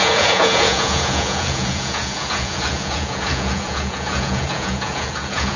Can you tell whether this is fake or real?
fake